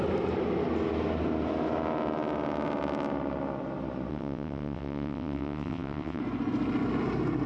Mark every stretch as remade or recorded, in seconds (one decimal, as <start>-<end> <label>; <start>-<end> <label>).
0.0-4.1 recorded; 4.1-6.2 remade; 6.2-7.5 recorded